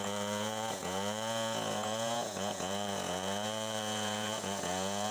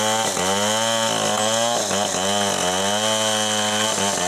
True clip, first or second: second